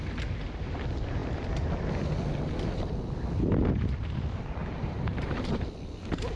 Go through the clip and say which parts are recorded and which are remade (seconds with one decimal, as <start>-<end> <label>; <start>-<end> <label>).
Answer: 0.0-4.6 recorded; 4.6-5.5 remade; 5.5-6.4 recorded